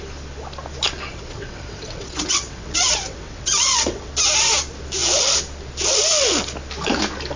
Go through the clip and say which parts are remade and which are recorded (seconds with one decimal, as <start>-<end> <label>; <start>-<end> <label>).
0.0-1.1 recorded; 1.1-4.1 remade; 4.1-7.4 recorded